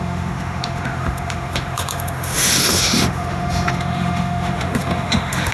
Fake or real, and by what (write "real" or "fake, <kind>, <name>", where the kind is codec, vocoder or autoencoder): fake, autoencoder, DAC-VAE